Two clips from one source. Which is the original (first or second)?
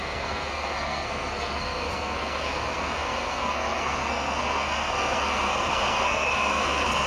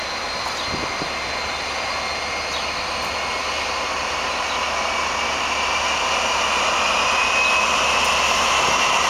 second